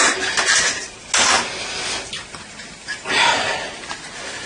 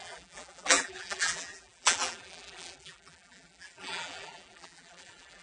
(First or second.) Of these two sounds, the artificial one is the second